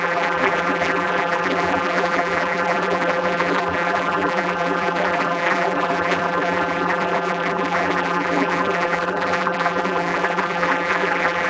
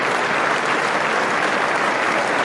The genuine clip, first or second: second